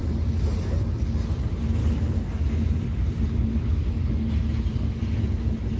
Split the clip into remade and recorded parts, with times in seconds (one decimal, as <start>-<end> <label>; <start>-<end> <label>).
0.0-1.8 recorded; 1.8-2.7 remade; 2.7-3.5 recorded; 3.5-4.1 remade; 4.1-4.7 recorded; 4.7-5.2 remade; 5.2-5.8 recorded